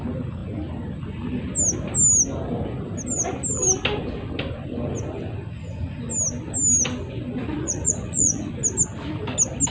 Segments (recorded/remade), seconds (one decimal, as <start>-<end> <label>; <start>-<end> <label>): 0.0-7.4 recorded; 7.4-8.5 remade; 8.5-9.7 recorded